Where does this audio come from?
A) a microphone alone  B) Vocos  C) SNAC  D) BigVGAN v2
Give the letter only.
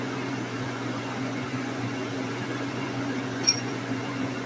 B